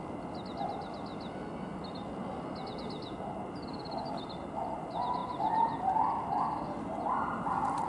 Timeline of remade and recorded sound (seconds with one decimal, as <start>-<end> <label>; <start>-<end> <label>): 0.0-7.9 recorded